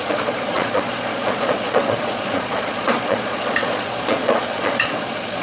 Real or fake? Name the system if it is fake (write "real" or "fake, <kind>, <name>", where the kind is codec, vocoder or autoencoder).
fake, vocoder, Vocos